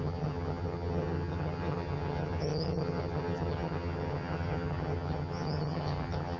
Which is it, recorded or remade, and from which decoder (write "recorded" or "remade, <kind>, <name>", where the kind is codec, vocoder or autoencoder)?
remade, vocoder, HiFi-GAN